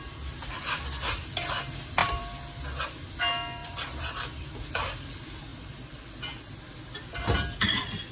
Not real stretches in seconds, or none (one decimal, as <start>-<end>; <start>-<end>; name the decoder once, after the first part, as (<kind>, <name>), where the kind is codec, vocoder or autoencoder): 2.0-2.6 (vocoder, BigVGAN v2); 3.6-4.5